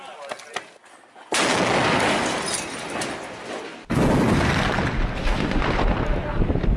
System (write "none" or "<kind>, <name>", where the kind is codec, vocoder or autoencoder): none